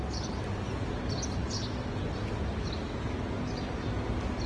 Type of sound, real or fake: real